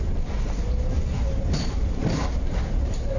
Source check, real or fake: fake